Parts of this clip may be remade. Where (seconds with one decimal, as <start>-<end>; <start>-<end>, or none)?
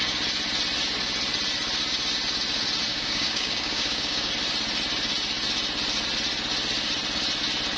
2.9-4.3